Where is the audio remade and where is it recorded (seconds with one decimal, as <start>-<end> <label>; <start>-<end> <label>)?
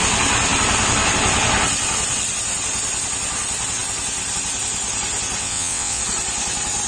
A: 0.0-5.4 recorded; 5.4-6.0 remade; 6.0-6.9 recorded